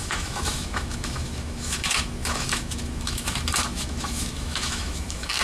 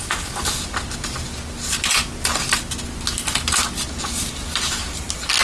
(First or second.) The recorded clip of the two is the second